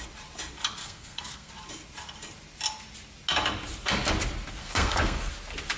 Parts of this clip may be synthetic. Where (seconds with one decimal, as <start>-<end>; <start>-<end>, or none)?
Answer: 0.8-1.5; 4.6-5.3